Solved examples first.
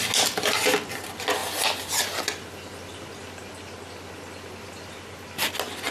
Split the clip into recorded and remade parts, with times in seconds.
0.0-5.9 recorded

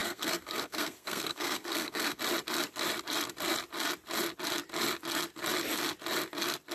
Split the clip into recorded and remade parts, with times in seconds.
0.0-2.2 remade; 2.2-6.7 recorded

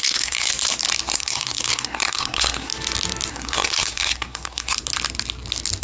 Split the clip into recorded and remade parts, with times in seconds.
0.0-0.5 remade; 0.5-1.1 recorded; 1.1-2.7 remade; 2.7-3.3 recorded; 3.3-4.8 remade; 4.8-5.8 recorded

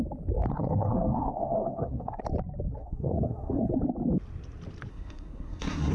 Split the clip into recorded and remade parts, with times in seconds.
0.0-0.5 recorded; 0.5-2.2 remade; 2.2-2.8 recorded; 2.8-3.7 remade; 3.7-4.9 recorded; 4.9-5.9 remade

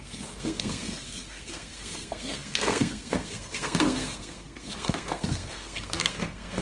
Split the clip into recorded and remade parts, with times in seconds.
0.0-6.6 remade